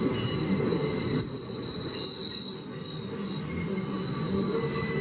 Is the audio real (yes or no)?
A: yes